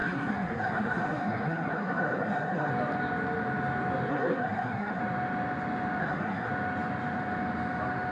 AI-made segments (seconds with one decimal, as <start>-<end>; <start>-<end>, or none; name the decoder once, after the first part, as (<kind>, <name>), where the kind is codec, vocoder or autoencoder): 0.0-2.7 (codec, SNAC); 4.1-5.0; 6.0-6.5